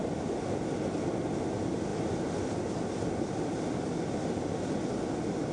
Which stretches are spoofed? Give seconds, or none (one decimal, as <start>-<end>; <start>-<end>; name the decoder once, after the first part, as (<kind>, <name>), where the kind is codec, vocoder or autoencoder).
none